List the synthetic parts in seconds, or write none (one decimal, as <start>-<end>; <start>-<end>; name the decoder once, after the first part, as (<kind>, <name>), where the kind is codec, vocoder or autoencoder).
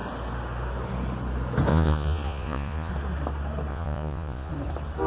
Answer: 1.7-2.9 (vocoder, Vocos); 3.7-4.5